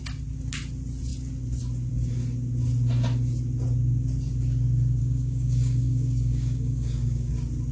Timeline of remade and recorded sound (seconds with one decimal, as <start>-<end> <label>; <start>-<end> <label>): 0.0-5.0 recorded; 5.0-7.3 remade; 7.3-7.7 recorded